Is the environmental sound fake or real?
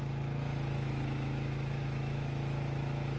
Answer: fake